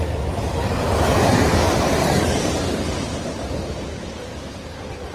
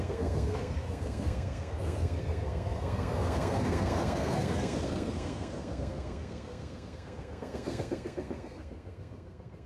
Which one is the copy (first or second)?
second